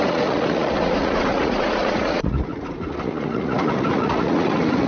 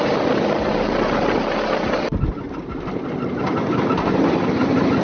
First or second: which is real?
second